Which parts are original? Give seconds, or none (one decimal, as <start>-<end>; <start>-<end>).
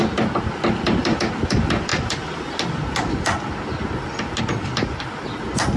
0.0-5.8